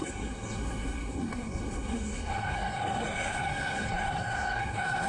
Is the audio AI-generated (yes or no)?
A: yes